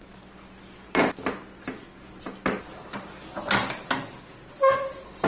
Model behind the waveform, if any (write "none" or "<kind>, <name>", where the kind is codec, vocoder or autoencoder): none